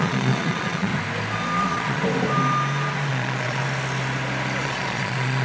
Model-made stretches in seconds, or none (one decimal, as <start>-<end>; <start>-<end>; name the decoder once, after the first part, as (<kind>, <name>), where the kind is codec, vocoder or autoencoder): 0.0-0.9 (vocoder, Vocos); 1.6-2.0; 3.1-3.6; 4.6-5.4